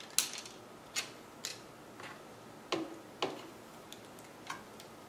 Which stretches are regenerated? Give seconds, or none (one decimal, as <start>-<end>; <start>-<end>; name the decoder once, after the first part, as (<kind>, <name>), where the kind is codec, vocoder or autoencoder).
none